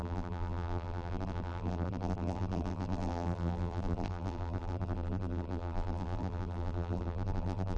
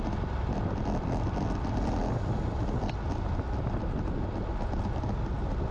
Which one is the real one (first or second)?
second